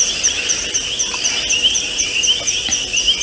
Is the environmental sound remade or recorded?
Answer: recorded